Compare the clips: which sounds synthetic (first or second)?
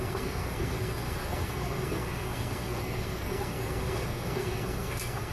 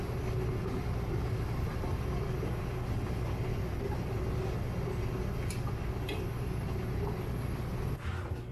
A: first